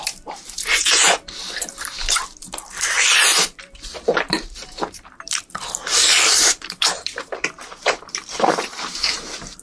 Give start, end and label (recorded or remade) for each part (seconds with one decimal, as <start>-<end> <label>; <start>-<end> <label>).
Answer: 0.0-9.6 remade